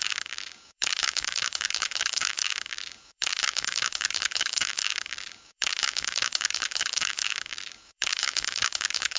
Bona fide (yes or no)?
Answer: no